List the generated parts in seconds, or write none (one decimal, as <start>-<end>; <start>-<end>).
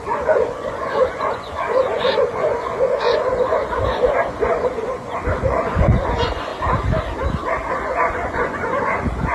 0.0-6.5; 7.7-9.3